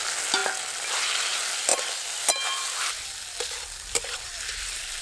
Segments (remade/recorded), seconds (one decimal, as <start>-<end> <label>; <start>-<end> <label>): 0.0-5.0 recorded

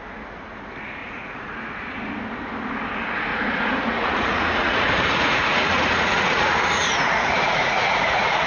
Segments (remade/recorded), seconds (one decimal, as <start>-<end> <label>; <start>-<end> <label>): 0.0-1.0 recorded; 1.0-1.9 remade; 1.9-3.3 recorded; 3.3-8.5 remade